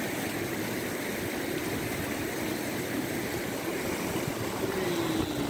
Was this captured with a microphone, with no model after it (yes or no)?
yes